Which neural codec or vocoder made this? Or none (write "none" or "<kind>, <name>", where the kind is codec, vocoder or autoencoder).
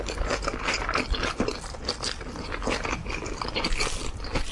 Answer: none